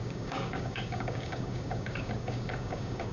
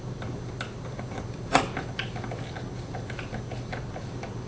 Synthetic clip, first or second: first